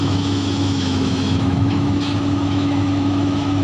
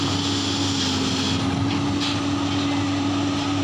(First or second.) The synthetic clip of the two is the first